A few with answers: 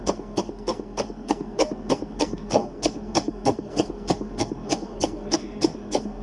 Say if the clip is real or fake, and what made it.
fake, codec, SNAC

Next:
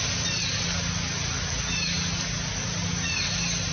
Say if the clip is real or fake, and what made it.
real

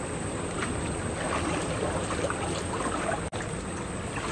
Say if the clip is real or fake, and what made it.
real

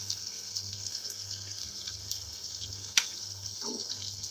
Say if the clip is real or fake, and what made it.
fake, codec, SNAC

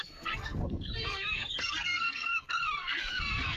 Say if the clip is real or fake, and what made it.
fake, codec, SNAC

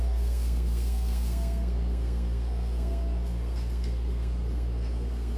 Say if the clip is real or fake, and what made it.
fake, codec, SNAC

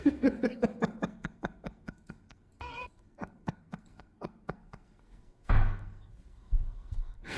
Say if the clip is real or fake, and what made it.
fake, codec, SNAC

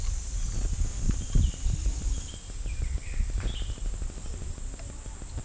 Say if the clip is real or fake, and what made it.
real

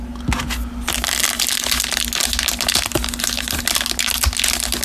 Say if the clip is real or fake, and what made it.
real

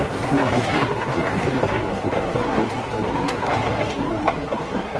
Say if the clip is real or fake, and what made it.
fake, codec, SNAC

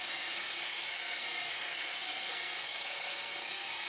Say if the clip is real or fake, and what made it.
fake, codec, SNAC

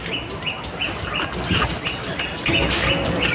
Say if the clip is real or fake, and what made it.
real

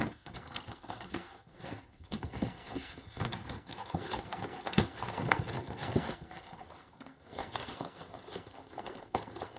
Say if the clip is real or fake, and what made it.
fake, codec, SNAC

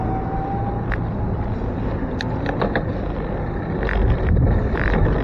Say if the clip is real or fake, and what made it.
real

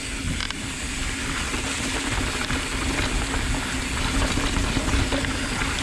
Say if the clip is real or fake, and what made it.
real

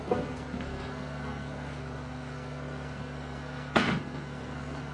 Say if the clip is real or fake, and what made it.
fake, codec, SNAC